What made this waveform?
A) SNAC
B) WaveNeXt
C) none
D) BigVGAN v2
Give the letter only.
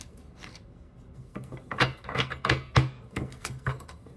A